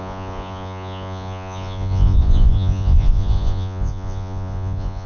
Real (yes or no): no